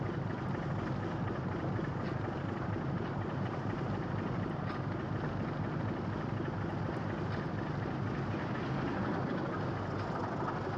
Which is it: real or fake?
real